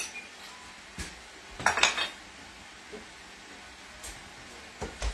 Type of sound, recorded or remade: recorded